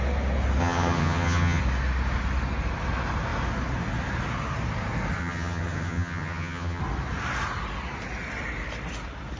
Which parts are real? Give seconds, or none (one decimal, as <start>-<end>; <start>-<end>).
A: 0.0-0.6; 1.6-5.2; 6.8-9.4